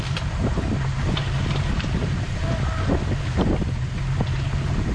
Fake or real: real